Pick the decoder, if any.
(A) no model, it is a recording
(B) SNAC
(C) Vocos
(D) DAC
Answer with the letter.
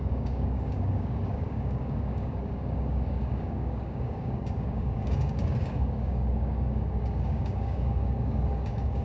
D